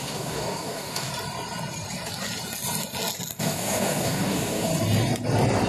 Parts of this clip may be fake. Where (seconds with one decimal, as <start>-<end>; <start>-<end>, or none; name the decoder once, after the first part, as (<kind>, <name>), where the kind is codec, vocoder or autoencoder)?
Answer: 0.0-1.1 (codec, DAC); 3.4-4.7